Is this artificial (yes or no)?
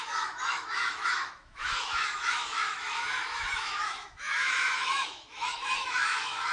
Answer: yes